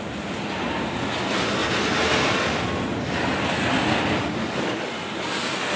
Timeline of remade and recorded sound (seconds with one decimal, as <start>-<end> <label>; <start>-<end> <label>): 0.0-5.8 recorded